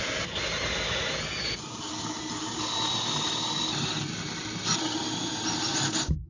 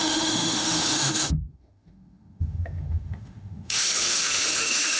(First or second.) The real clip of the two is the first